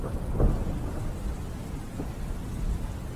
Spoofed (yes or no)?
no